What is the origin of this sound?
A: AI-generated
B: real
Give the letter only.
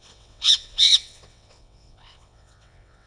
A